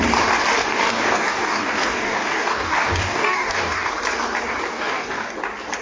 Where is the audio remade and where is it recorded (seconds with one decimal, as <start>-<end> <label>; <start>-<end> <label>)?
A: 0.0-0.6 recorded; 0.6-3.9 remade; 3.9-4.7 recorded; 4.7-5.3 remade; 5.3-5.8 recorded